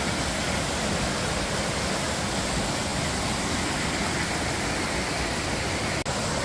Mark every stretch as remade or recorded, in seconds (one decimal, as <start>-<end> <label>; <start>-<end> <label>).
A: 0.0-6.4 recorded